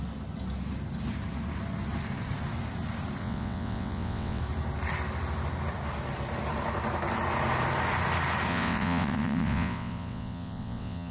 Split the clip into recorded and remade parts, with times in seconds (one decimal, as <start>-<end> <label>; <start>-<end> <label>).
0.0-3.2 recorded; 3.2-4.4 remade; 4.4-8.5 recorded; 8.5-11.1 remade